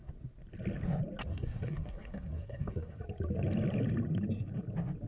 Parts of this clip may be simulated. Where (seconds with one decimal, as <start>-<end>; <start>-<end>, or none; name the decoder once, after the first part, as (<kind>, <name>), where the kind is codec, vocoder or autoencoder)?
1.3-3.0 (codec, SNAC)